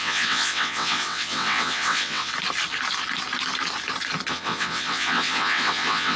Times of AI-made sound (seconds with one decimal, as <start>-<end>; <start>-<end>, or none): 0.0-2.3; 4.3-6.2